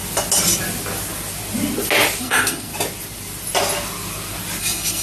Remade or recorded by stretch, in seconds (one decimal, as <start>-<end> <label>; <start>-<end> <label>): 0.0-2.2 recorded; 2.2-2.7 remade; 2.7-4.6 recorded; 4.6-5.0 remade